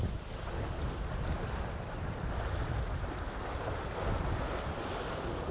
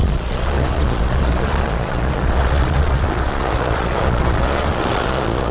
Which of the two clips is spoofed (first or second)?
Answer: second